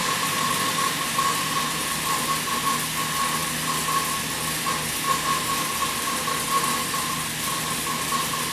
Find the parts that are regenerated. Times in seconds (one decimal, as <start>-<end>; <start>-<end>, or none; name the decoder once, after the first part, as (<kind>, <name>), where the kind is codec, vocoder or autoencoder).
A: 0.0-2.3 (vocoder, BigVGAN v2)